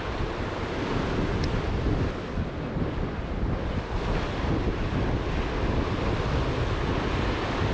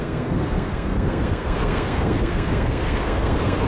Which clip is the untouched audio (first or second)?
first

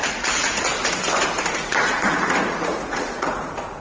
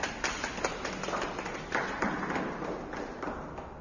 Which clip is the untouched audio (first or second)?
second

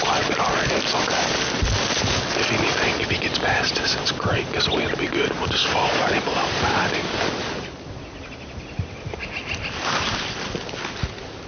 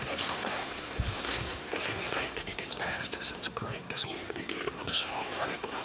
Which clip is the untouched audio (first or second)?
first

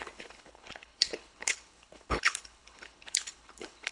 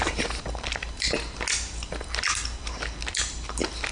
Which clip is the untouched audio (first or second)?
second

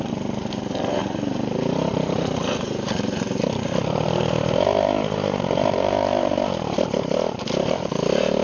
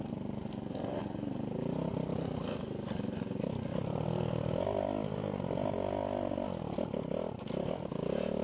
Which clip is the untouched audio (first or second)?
second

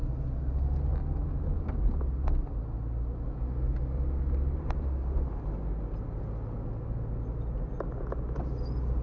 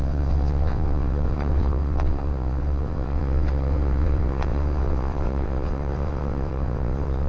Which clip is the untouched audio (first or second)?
first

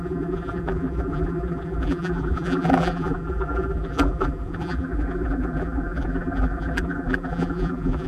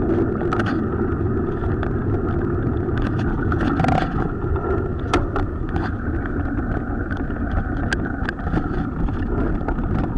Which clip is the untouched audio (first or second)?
second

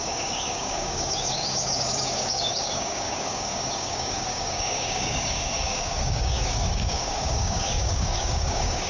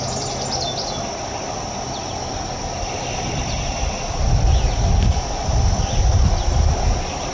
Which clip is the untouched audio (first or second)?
second